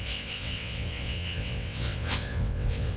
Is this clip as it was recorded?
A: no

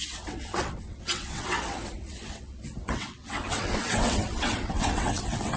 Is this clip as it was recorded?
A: no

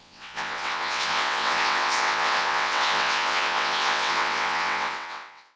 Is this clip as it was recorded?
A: no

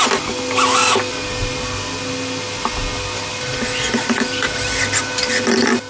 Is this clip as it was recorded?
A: yes